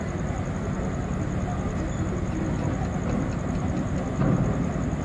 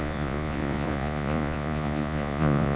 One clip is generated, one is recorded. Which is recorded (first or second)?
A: first